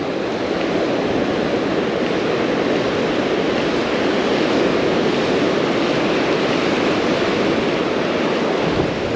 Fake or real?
real